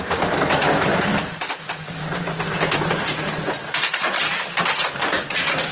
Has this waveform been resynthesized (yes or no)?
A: no